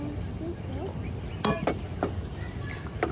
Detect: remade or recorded recorded